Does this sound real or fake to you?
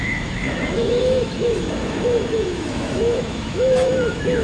fake